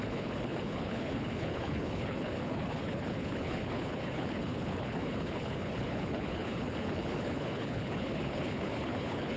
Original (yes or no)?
no